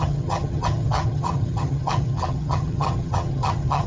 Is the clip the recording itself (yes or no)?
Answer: no